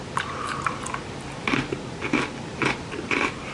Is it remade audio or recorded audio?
recorded